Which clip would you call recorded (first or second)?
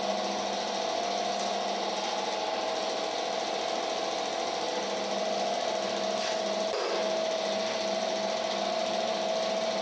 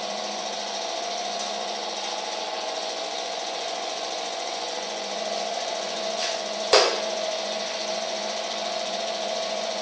first